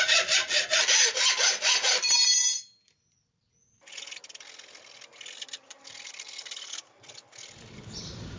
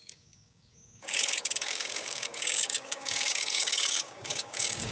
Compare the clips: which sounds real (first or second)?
first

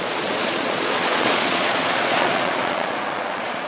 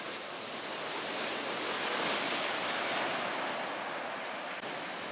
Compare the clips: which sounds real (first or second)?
second